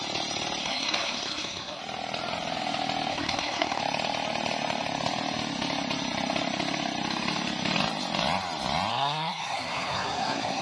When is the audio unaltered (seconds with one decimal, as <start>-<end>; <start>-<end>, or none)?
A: 0.0-0.6; 1.8-3.1; 3.8-8.9